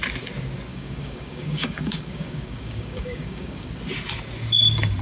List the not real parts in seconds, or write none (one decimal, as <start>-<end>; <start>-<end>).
0.7-3.7